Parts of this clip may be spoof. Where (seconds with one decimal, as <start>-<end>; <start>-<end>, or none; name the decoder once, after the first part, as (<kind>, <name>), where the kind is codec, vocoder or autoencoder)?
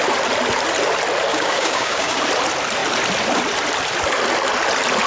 1.3-2.2 (codec, DAC)